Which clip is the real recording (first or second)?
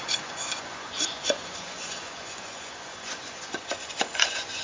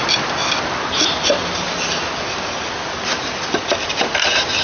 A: second